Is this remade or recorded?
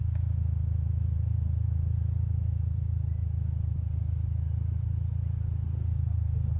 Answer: recorded